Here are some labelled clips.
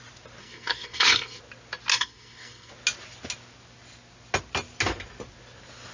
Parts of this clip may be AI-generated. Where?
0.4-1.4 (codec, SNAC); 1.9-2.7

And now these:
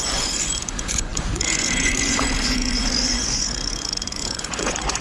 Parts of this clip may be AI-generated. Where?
0.0-5.0 (vocoder, Vocos)